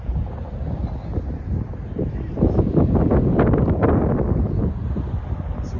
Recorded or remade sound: recorded